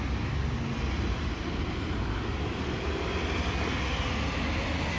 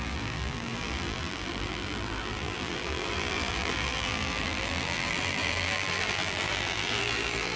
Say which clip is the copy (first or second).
second